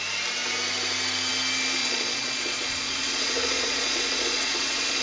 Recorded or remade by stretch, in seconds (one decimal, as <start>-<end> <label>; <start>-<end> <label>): 0.0-1.8 recorded; 1.8-5.0 remade